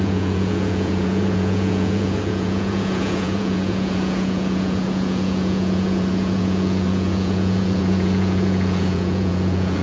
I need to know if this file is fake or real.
fake